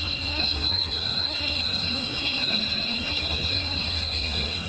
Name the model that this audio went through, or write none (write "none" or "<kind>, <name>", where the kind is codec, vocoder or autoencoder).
codec, SNAC